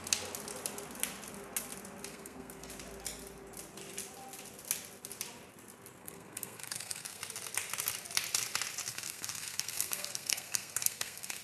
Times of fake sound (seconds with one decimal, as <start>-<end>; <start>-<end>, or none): 2.1-2.7; 6.0-7.2; 8.9-11.4